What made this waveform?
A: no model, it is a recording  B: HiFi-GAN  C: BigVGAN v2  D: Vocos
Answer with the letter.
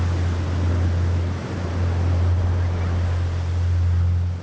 A